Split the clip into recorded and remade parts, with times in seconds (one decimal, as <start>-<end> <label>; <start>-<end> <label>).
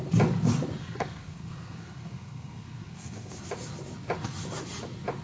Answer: 0.0-0.8 recorded; 0.8-3.4 remade; 3.4-5.2 recorded